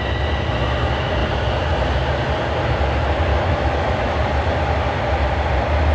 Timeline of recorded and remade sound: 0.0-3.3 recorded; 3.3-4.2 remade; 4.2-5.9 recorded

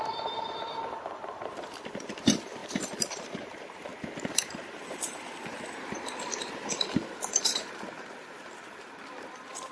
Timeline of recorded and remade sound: 0.0-3.9 remade; 3.9-4.5 recorded; 4.5-9.7 remade

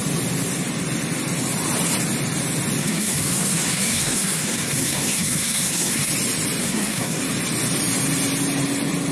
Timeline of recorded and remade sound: 0.0-2.8 recorded; 2.8-6.1 remade; 6.1-6.6 recorded; 6.6-7.2 remade; 7.2-9.1 recorded

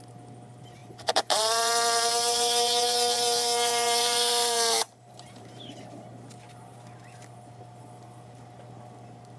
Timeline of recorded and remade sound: 0.0-0.8 recorded; 0.8-5.8 remade; 5.8-9.4 recorded

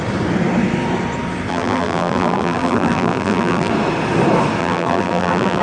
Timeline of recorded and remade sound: 0.0-1.5 recorded; 1.5-3.7 remade; 3.7-4.6 recorded; 4.6-5.6 remade